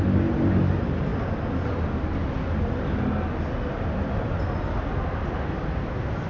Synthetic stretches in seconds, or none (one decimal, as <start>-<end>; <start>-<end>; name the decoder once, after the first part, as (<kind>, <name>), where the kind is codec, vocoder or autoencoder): none